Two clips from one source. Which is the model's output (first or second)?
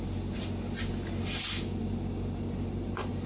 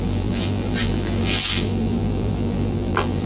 second